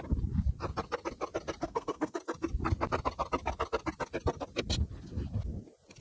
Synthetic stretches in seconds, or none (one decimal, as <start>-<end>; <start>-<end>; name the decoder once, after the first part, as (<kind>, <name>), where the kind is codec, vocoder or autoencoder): 1.6-2.2 (codec, SNAC)

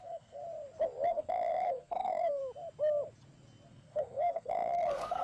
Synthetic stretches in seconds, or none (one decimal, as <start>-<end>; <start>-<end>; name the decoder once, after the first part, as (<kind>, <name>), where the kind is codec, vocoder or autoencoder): 0.0-0.4 (codec, SNAC); 1.1-2.4; 3.7-5.2